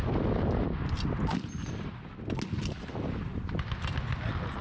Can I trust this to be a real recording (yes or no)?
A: yes